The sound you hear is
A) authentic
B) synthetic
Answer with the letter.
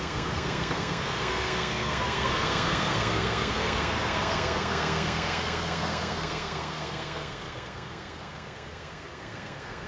B